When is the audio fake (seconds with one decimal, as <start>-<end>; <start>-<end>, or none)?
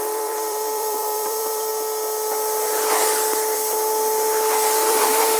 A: 0.0-1.7; 4.9-5.4